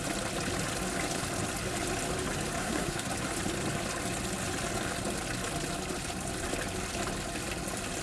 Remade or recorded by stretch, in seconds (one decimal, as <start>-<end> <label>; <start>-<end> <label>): 0.0-2.6 recorded; 2.6-3.1 remade; 3.1-8.0 recorded